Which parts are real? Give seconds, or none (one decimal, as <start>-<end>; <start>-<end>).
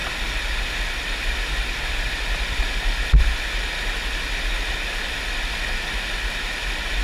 0.0-7.0